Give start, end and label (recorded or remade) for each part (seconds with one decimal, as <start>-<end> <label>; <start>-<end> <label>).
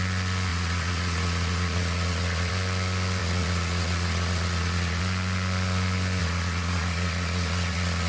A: 0.0-0.5 recorded; 0.5-2.5 remade; 2.5-3.2 recorded; 3.2-5.0 remade; 5.0-6.2 recorded; 6.2-8.1 remade